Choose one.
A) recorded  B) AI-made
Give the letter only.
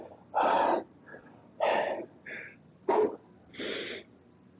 A